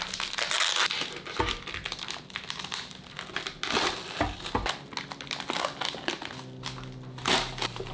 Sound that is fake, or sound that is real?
real